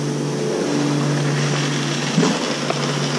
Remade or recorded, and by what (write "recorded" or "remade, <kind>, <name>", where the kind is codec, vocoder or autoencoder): recorded